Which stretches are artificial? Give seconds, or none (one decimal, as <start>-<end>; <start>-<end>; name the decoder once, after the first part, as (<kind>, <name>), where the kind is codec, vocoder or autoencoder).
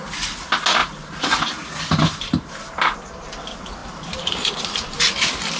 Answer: 0.8-3.1 (vocoder, BigVGAN v2); 3.8-4.6